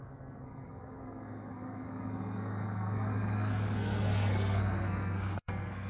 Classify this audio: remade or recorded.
remade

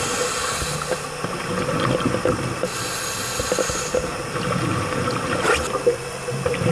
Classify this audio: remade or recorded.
recorded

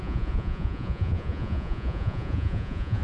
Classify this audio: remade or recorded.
remade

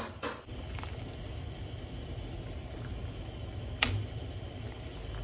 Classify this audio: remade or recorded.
recorded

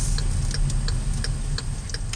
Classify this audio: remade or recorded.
recorded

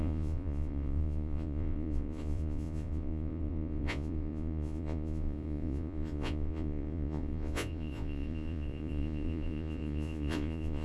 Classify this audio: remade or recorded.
remade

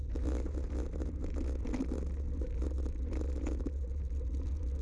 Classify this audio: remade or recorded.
recorded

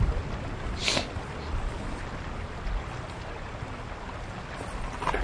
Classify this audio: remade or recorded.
recorded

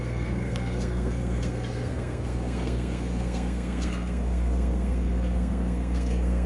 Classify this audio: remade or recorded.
remade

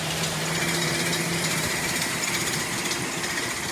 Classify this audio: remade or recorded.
remade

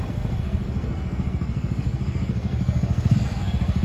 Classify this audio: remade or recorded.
remade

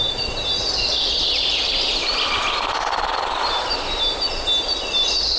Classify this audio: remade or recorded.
recorded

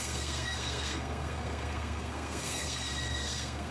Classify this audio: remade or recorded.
remade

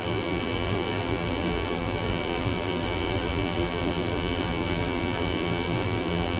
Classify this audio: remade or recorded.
remade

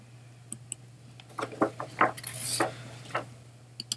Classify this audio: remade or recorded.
recorded